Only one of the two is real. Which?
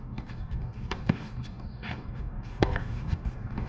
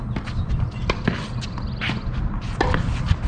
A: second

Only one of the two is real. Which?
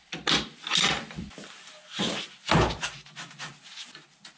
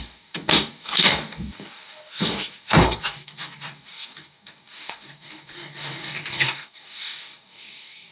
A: first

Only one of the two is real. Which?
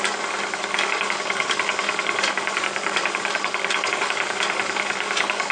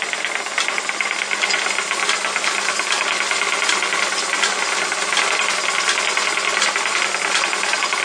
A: second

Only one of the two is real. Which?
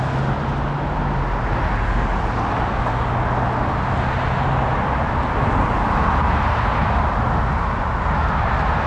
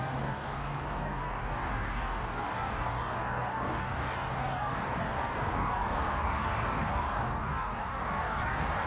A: first